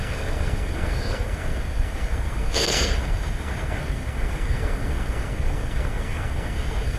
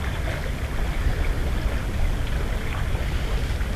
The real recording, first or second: second